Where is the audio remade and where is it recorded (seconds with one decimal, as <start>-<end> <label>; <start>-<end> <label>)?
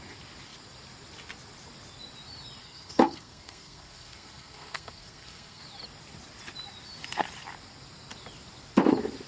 0.0-2.6 recorded; 2.6-5.6 remade; 5.6-9.3 recorded